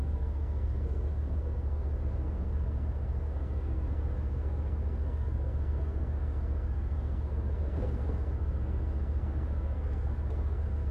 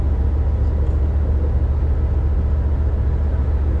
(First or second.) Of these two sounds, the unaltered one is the second